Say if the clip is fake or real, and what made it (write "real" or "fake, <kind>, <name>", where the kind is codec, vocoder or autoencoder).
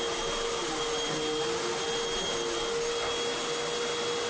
real